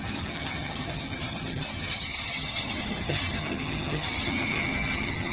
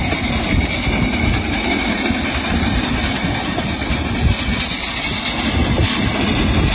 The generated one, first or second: first